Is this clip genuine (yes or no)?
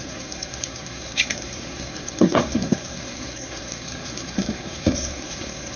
no